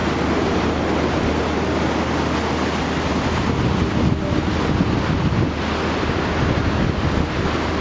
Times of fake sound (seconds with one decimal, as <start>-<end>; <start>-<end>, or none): none